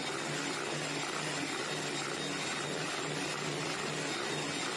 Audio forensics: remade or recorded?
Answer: recorded